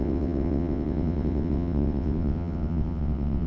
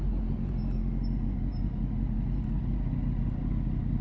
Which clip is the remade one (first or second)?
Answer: first